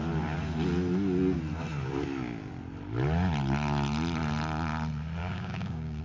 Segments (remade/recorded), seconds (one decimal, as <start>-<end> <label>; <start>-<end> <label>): 0.0-5.2 recorded; 5.2-6.0 remade